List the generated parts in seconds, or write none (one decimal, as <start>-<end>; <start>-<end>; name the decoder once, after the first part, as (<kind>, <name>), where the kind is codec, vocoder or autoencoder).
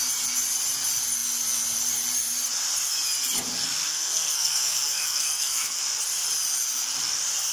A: 3.9-5.8 (codec, SNAC)